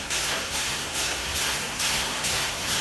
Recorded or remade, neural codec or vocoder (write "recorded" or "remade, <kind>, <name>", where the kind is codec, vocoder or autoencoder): remade, codec, SNAC